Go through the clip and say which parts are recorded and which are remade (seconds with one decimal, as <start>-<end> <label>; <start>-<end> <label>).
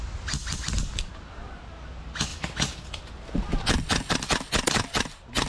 0.0-0.4 recorded; 0.4-1.1 remade; 1.1-2.3 recorded; 2.3-3.0 remade; 3.0-3.5 recorded; 3.5-4.1 remade; 4.1-5.5 recorded